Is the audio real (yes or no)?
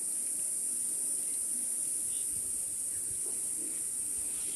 yes